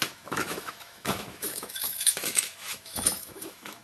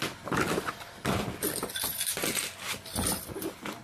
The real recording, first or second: second